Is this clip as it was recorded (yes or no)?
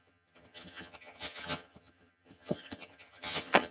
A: no